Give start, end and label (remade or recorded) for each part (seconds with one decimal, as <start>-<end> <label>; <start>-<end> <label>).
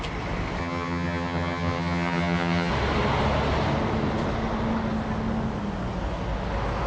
0.0-0.6 recorded; 0.6-2.7 remade; 2.7-6.9 recorded